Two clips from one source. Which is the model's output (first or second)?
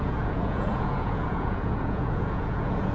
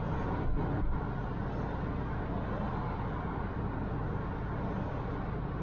first